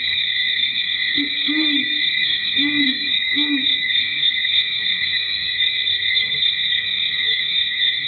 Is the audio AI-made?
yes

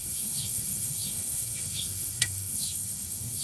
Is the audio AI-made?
yes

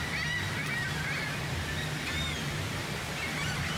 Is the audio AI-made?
no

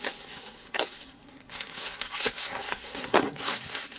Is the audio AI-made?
yes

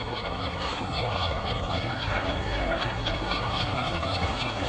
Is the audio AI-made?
yes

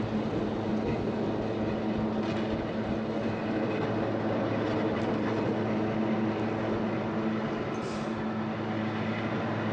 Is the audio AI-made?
no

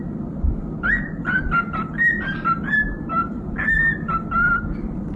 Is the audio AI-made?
no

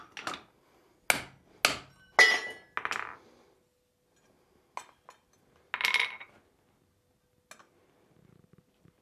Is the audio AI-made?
no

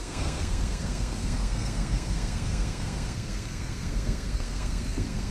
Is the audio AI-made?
yes